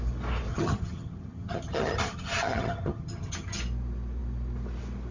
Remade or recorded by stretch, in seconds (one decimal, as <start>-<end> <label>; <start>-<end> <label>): 0.0-0.5 recorded; 0.5-3.6 remade; 3.6-5.1 recorded